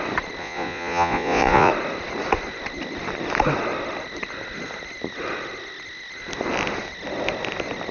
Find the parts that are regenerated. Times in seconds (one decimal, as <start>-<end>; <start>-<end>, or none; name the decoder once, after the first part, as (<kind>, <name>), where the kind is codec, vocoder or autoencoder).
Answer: 0.4-1.7 (vocoder, Vocos)